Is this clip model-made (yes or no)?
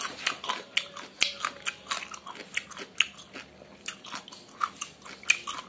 no